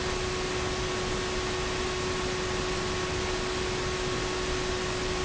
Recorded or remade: recorded